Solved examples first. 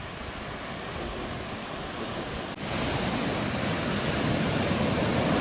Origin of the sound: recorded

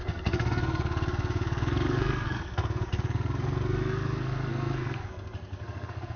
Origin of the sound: remade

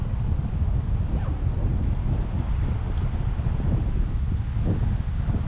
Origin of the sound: recorded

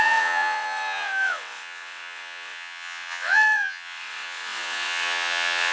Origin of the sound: remade